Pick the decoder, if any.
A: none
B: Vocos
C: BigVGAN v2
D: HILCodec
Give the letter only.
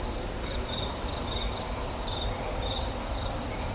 A